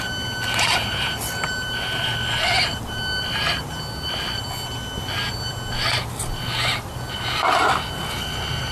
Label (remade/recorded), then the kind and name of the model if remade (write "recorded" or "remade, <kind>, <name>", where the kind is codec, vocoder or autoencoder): recorded